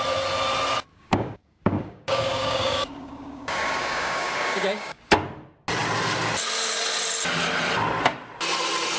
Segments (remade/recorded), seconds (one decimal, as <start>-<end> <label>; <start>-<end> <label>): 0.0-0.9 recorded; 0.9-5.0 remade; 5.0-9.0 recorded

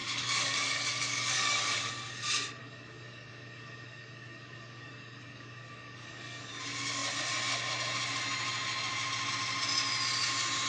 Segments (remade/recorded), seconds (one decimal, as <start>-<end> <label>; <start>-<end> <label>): 0.0-1.9 remade; 1.9-2.6 recorded; 2.6-6.5 remade; 6.5-10.7 recorded

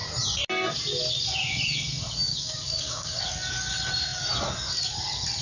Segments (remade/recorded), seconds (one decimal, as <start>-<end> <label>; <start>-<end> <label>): 0.0-2.3 recorded; 2.3-3.2 remade; 3.2-5.4 recorded